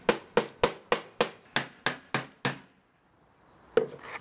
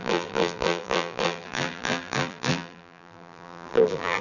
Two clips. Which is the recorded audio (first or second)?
first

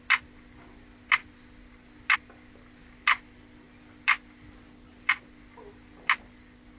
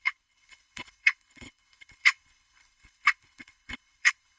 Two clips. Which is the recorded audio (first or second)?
first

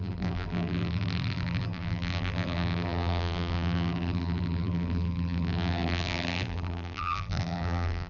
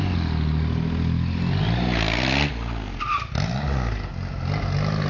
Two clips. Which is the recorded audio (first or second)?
second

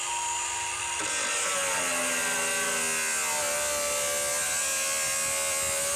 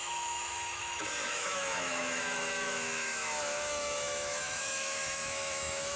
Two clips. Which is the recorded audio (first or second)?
first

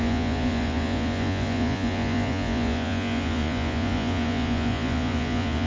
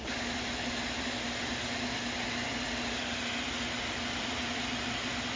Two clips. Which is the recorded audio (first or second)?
second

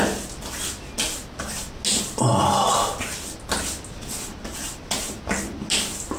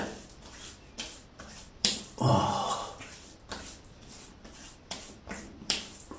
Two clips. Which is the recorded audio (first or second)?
first